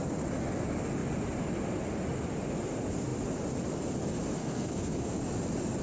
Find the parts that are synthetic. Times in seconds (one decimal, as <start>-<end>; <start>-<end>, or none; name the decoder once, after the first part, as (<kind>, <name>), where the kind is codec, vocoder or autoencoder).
4.4-5.2 (codec, SNAC)